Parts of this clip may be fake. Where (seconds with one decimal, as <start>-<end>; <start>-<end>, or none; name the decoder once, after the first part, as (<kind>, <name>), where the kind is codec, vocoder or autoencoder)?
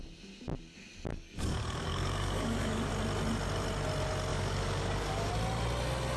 1.1-2.9 (codec, DAC); 4.3-5.3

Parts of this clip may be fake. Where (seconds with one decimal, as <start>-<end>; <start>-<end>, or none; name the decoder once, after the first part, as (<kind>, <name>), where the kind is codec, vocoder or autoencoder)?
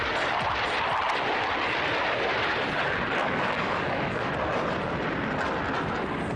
3.2-4.3 (codec, DAC)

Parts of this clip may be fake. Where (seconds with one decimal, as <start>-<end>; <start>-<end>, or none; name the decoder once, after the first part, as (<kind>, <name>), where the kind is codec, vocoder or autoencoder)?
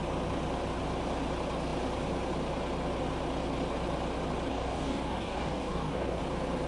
4.5-6.2 (codec, DAC)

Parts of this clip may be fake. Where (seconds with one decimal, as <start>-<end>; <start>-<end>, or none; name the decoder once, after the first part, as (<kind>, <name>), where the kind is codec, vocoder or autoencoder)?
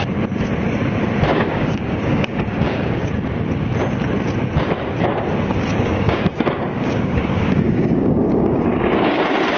1.3-3.1 (codec, DAC); 5.7-9.2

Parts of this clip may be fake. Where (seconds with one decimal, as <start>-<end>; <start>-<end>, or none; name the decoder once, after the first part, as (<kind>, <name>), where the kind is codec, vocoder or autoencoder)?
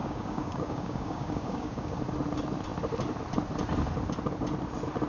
0.0-2.0 (codec, DAC)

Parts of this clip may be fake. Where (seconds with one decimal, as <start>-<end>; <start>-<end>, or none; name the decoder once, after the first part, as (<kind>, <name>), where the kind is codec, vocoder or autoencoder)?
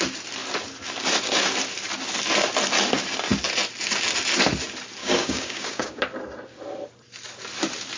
5.0-6.0 (codec, DAC)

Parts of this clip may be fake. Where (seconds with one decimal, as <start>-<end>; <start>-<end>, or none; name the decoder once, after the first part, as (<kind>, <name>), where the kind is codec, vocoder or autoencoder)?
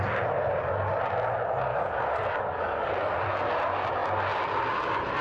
1.7-2.9 (codec, DAC)